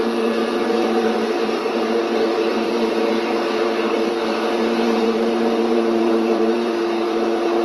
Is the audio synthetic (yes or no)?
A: yes